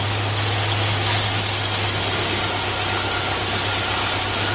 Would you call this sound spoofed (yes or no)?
no